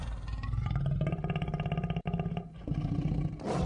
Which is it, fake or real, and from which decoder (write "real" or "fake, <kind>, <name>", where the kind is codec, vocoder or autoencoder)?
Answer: real